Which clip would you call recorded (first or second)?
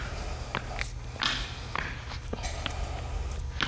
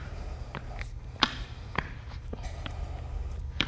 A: first